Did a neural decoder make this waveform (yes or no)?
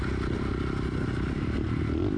no